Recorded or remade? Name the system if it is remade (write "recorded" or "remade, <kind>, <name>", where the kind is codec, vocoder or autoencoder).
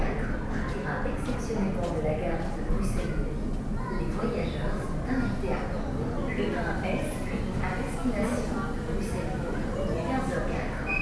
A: recorded